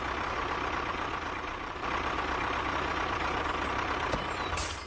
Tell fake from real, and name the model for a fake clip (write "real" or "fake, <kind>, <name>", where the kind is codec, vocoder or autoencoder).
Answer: real